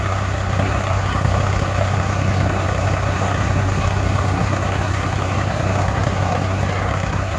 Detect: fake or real fake